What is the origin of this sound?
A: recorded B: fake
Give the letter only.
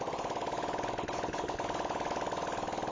A